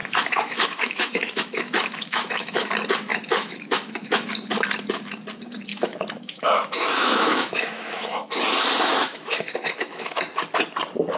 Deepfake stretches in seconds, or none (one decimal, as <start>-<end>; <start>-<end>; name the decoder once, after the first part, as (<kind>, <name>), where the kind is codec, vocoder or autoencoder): 0.0-2.7 (autoencoder, DAC-VAE); 3.1-4.3; 5.7-8.4; 8.9-10.2